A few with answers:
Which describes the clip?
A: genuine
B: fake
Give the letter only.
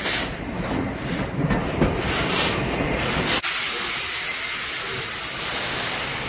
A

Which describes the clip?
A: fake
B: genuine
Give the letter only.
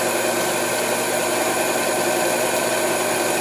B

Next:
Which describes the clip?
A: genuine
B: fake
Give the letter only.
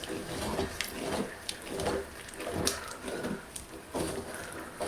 A